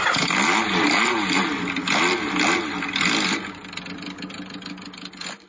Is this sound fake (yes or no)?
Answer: no